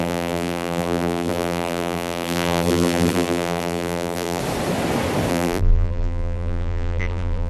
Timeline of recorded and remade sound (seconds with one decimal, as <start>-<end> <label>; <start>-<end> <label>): 0.0-4.4 remade; 4.4-5.3 recorded; 5.3-7.5 remade